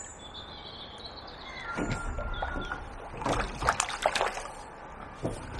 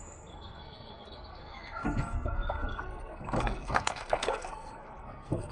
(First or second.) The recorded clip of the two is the first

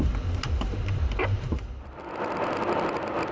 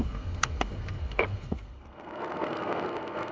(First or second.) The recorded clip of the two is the first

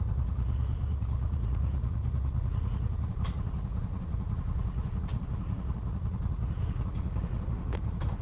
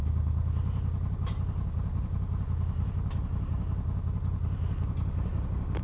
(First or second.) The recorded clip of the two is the second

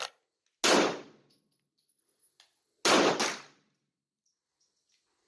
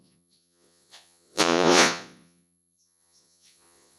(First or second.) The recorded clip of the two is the first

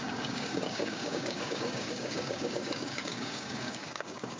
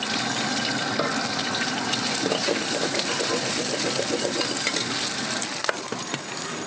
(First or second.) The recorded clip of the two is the second